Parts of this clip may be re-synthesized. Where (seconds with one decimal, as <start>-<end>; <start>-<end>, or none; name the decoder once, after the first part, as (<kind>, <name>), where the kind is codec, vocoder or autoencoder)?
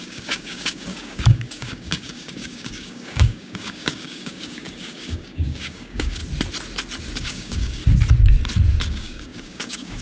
0.0-6.2 (codec, DAC); 7.2-7.8; 8.9-10.0